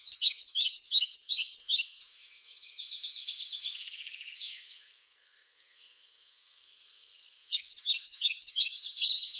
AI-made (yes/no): yes